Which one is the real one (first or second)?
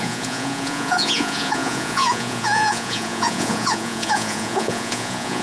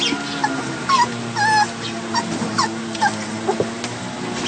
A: second